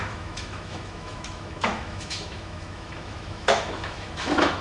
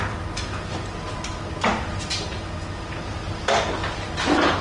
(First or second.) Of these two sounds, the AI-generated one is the first